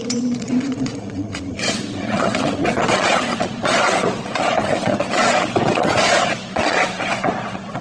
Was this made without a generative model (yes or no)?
no